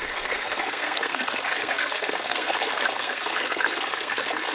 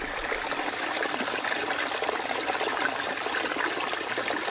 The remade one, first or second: first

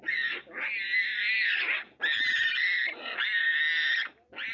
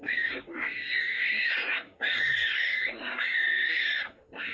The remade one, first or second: second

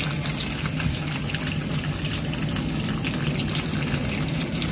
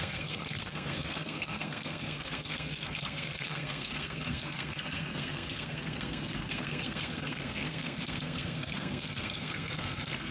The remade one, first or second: second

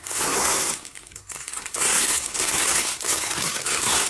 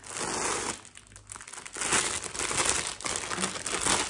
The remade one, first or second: first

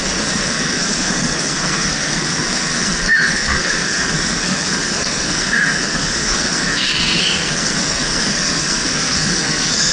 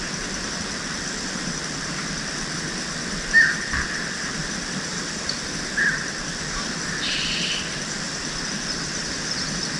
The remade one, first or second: first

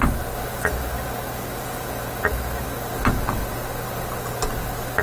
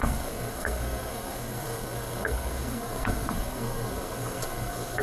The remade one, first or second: second